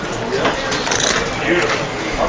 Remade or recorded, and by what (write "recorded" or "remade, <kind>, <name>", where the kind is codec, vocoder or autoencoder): recorded